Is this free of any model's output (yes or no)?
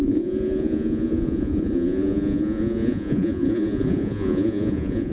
no